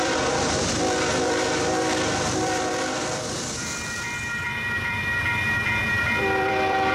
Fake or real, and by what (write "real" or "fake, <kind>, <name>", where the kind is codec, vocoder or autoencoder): fake, vocoder, BigVGAN v2